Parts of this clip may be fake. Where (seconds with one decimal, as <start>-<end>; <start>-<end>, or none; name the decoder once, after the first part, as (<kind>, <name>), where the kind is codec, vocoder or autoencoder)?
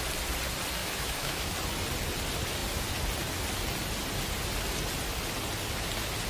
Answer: 0.8-1.5 (autoencoder, DAC-VAE)